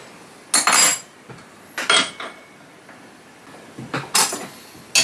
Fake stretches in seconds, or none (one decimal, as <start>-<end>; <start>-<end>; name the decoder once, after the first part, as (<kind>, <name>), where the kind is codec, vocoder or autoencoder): none